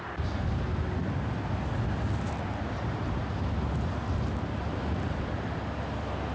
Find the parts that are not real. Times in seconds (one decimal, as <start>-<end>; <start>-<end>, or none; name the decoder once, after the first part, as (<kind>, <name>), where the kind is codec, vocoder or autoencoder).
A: none